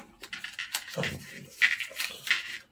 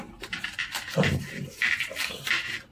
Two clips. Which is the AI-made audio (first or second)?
second